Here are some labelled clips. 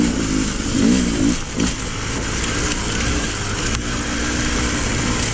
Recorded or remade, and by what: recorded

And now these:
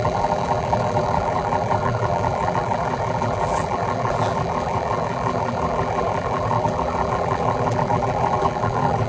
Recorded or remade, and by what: remade, vocoder, BigVGAN v2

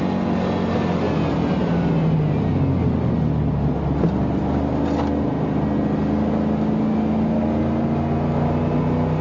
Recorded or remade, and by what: recorded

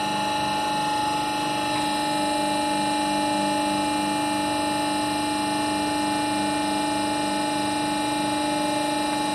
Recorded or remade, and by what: recorded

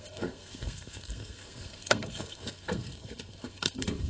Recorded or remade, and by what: remade, codec, SNAC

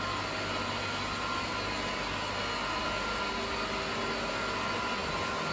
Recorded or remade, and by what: recorded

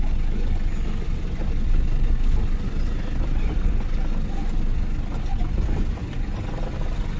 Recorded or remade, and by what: recorded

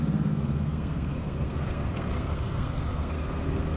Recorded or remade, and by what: remade, codec, SNAC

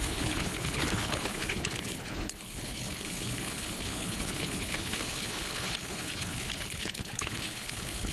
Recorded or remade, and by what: remade, codec, HILCodec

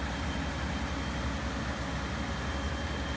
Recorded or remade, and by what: recorded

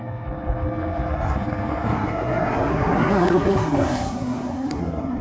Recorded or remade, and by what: remade, codec, SNAC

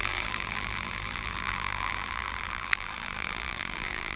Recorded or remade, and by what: remade, vocoder, BigVGAN v2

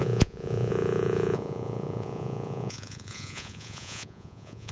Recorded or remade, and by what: remade, vocoder, Vocos